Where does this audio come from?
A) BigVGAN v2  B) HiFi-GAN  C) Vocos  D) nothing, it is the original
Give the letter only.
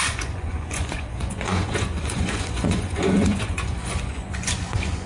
C